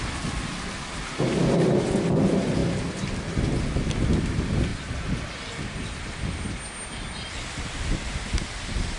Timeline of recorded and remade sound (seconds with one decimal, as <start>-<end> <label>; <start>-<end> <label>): 0.0-9.0 recorded